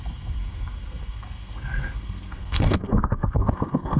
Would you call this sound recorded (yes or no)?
no